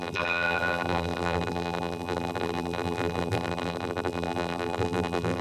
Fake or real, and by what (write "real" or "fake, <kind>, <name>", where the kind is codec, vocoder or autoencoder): fake, vocoder, BigVGAN v2